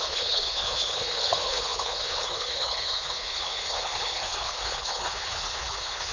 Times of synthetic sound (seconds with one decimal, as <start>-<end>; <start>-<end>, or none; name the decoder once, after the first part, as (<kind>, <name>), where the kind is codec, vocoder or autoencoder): 0.0-6.1 (codec, HILCodec)

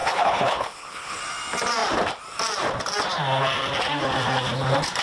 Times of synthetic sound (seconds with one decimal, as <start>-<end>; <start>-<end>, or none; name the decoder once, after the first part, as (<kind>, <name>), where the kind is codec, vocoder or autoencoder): 0.0-1.2 (codec, HILCodec)

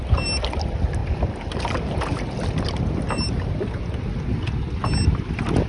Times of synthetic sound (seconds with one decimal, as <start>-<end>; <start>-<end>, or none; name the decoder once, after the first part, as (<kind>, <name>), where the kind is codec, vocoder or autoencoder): none

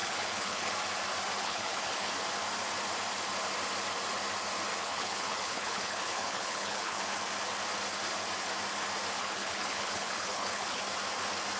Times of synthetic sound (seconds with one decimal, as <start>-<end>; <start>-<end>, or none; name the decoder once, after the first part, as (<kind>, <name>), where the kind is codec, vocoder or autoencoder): 0.0-0.7 (codec, HILCodec); 1.4-2.1; 4.7-7.0; 9.2-10.8

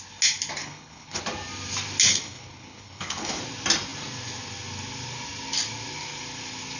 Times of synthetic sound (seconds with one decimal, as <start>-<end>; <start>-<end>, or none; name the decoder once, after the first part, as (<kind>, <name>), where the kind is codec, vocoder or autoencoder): 0.6-1.2 (codec, HILCodec); 2.1-3.4

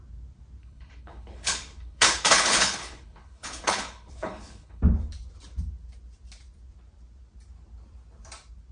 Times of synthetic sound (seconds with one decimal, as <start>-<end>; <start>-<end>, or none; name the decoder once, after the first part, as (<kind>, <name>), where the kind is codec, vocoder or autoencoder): 0.6-4.8 (codec, HILCodec)

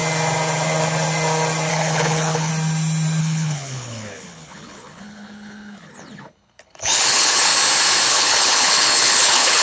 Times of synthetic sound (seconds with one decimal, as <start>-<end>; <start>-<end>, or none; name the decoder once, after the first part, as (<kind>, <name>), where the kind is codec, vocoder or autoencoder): 1.7-2.5 (codec, HILCodec); 3.2-7.5; 8.1-9.6

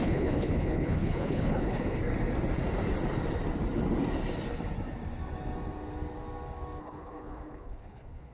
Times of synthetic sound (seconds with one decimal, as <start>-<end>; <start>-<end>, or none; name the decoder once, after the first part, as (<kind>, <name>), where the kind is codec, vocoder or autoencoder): 0.0-2.0 (codec, HILCodec); 6.8-8.3